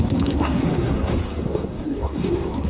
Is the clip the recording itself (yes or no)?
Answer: no